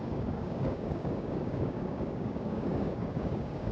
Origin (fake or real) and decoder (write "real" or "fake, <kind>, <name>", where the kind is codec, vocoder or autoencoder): fake, codec, DAC